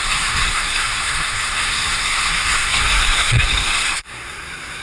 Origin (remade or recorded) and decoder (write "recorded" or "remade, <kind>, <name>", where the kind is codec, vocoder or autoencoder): remade, codec, SNAC